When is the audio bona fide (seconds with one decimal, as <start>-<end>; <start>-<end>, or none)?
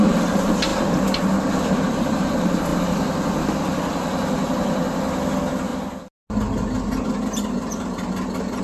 0.0-8.6